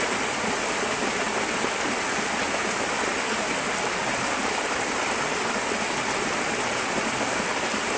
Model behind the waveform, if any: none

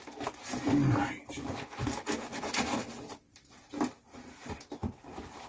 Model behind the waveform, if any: none